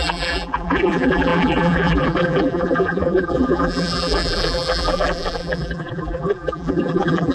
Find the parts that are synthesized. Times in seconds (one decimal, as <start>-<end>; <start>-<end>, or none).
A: 0.0-7.3